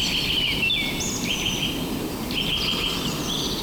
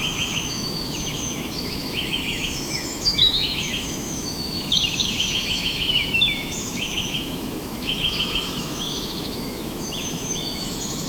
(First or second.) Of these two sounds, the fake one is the second